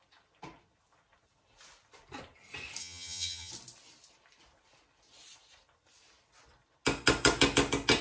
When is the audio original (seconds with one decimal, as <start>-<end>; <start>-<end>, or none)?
0.0-2.8; 3.5-8.0